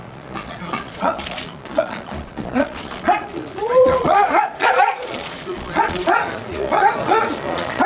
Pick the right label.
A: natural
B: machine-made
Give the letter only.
B